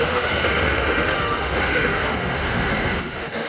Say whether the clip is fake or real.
fake